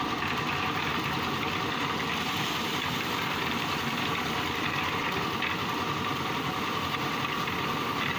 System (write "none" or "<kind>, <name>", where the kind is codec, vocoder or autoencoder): vocoder, BigVGAN v2